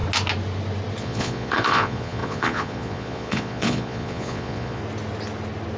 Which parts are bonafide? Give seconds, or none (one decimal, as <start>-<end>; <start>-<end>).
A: 0.0-1.0; 4.8-5.8